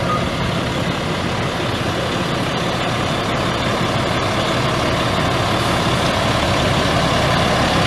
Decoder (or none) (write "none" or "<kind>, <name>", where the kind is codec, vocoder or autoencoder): none